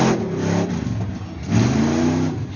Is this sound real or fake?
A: real